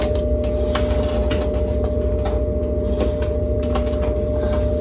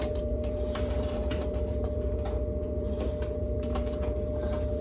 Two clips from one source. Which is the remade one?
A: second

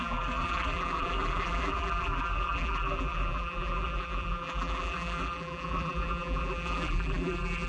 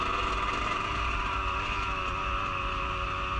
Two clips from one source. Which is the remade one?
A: first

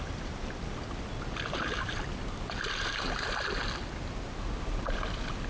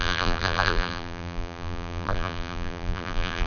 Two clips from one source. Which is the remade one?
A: second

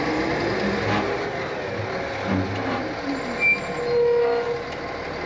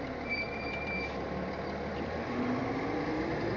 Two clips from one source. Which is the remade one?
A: second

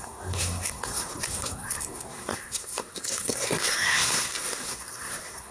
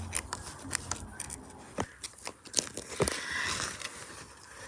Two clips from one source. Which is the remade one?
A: first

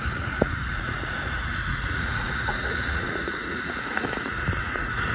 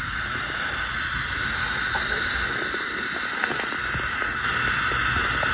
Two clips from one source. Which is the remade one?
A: first